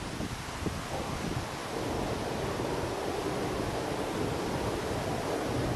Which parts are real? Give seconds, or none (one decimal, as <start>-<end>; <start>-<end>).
0.0-5.8